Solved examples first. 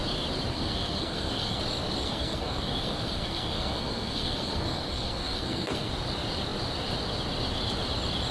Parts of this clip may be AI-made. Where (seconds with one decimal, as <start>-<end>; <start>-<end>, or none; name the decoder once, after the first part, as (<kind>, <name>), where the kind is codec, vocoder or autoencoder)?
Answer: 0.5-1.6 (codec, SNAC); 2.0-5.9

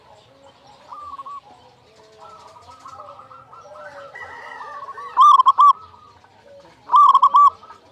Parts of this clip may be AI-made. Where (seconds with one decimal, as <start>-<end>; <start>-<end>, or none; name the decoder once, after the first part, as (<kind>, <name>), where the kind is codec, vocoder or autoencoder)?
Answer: 0.9-1.4 (vocoder, BigVGAN v2)

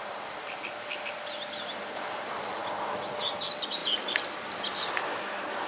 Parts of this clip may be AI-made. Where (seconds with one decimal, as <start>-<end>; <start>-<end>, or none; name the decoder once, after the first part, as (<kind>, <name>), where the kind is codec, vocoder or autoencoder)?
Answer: 2.6-3.4 (vocoder, BigVGAN v2); 3.8-5.7